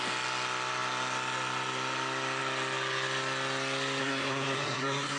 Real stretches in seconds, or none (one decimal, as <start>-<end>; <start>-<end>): 0.0-4.0